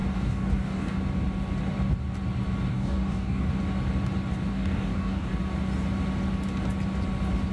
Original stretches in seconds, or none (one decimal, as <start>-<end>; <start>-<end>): 1.0-2.7; 3.5-4.5; 5.3-7.5